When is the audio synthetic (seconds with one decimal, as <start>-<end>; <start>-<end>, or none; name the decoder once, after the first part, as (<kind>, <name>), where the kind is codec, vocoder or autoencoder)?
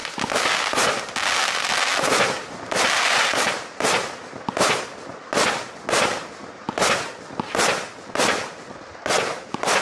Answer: none